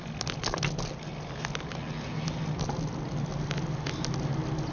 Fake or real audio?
real